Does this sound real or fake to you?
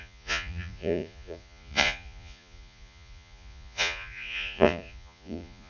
fake